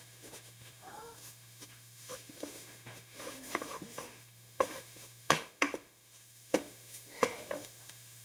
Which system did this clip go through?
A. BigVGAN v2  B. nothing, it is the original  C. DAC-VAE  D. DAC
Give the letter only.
C